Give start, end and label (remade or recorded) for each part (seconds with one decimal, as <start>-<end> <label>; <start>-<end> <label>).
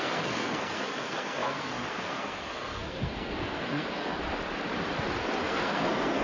0.0-4.2 remade; 4.2-5.4 recorded; 5.4-6.2 remade